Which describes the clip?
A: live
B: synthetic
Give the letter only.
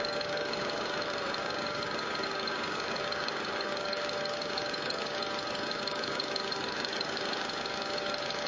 B